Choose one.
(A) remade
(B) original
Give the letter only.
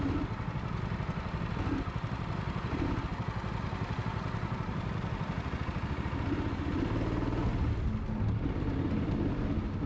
B